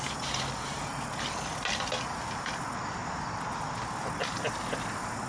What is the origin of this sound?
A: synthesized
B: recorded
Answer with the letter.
B